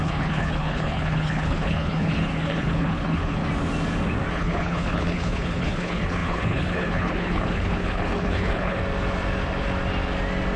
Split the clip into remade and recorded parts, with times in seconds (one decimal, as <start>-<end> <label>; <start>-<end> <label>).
0.0-3.4 remade; 3.4-4.3 recorded; 4.3-8.8 remade; 8.8-10.6 recorded